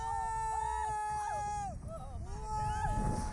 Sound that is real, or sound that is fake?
real